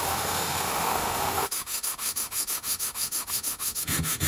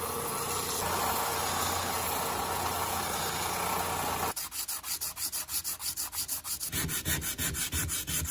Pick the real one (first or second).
second